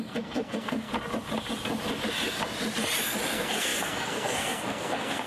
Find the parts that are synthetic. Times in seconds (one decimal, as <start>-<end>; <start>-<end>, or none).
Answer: 0.0-0.9; 3.3-5.3